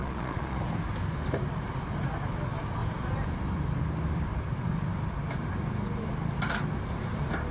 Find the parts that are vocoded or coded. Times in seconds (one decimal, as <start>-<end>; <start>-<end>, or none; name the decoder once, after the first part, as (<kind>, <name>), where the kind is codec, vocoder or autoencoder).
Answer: 0.0-0.6 (vocoder, Vocos)